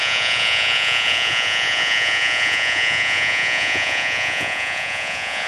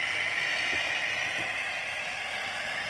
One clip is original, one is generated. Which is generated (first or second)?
first